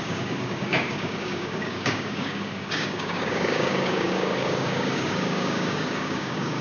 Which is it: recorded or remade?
remade